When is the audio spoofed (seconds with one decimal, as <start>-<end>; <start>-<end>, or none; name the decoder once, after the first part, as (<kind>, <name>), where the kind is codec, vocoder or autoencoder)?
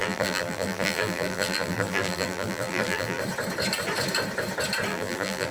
0.0-3.2 (vocoder, BigVGAN v2); 4.9-5.5